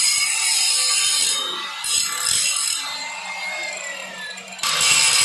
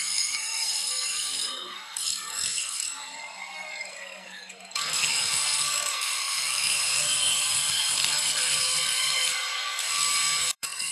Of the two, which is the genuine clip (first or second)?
first